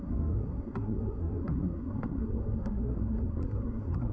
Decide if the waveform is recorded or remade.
remade